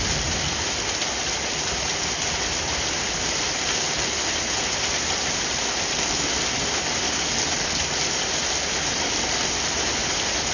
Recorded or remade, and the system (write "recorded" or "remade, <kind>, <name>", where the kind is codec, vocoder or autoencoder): recorded